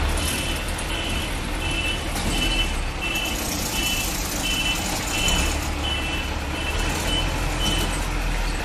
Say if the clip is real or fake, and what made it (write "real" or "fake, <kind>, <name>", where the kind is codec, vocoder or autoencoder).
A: real